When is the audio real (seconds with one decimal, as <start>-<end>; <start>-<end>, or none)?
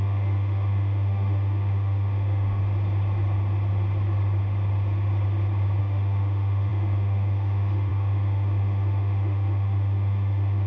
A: 2.6-5.8